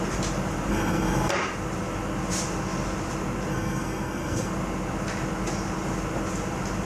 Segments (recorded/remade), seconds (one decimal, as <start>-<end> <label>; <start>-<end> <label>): 0.0-0.7 recorded; 0.7-1.3 remade; 1.3-3.5 recorded; 3.5-4.5 remade; 4.5-6.9 recorded